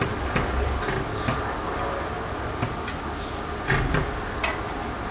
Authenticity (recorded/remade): recorded